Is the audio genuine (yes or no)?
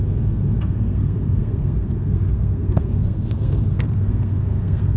no